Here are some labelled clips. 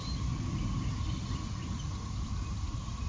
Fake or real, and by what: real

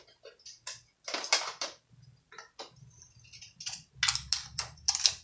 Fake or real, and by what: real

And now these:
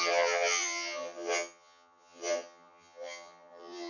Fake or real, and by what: fake, vocoder, HiFi-GAN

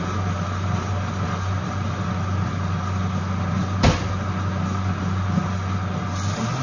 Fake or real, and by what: real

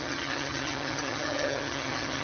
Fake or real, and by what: fake, vocoder, HiFi-GAN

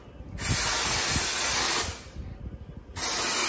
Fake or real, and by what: real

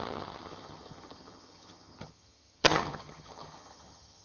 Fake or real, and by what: fake, vocoder, HiFi-GAN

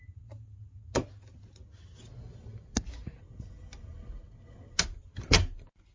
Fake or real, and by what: real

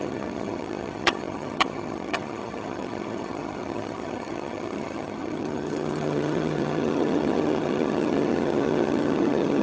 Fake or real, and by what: fake, vocoder, HiFi-GAN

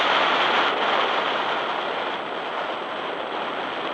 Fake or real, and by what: real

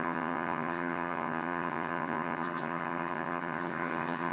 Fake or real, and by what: fake, vocoder, HiFi-GAN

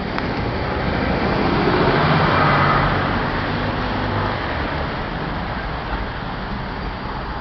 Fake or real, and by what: real